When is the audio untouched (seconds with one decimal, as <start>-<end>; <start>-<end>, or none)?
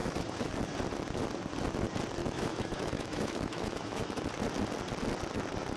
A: 0.5-2.2; 4.2-5.8